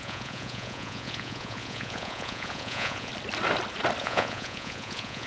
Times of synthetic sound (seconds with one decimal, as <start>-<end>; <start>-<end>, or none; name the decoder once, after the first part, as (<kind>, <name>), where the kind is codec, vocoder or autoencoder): 0.0-3.1 (vocoder, Vocos); 4.0-5.3